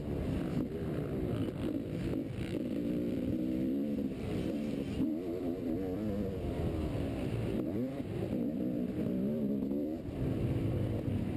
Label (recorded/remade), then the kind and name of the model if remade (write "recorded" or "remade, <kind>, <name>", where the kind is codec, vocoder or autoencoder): remade, vocoder, BigVGAN v2